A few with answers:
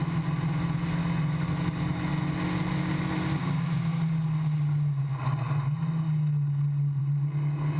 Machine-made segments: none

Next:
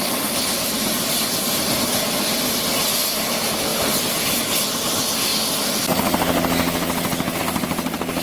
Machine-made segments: 0.0-5.3; 7.4-8.2

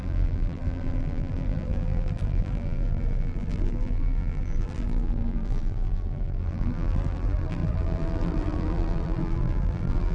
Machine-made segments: 0.0-10.1

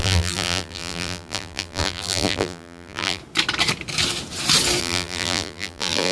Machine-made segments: 0.0-3.2; 4.8-6.1

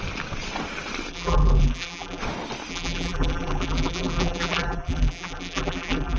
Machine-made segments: 1.1-2.2; 2.7-6.2

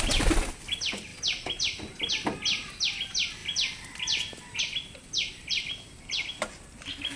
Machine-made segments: none

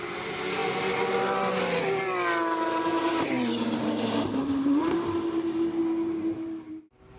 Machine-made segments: 2.9-6.8